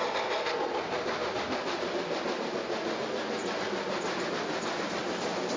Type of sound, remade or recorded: recorded